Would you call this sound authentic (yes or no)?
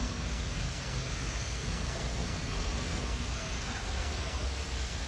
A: no